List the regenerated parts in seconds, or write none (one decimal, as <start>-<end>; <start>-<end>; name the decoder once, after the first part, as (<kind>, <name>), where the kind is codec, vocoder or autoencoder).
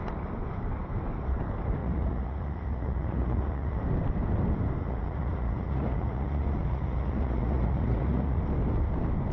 1.8-3.8 (vocoder, Vocos); 4.8-8.4